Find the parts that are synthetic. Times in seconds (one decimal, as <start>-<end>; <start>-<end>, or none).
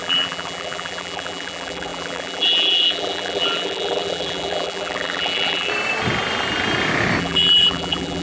0.0-5.7; 7.2-8.2